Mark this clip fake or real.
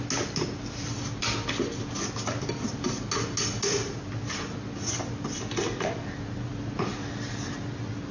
real